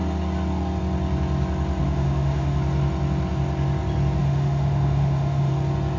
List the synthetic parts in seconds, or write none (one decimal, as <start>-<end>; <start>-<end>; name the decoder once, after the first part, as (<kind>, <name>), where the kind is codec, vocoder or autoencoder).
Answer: 1.8-2.6 (autoencoder, DAC-VAE); 4.2-5.5